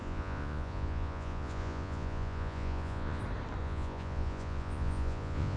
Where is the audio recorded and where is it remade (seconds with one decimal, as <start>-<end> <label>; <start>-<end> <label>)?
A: 0.0-3.2 remade; 3.2-3.6 recorded; 3.6-5.6 remade